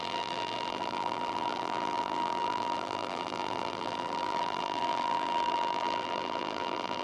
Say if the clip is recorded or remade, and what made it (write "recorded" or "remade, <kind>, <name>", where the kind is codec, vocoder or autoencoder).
remade, vocoder, BigVGAN v2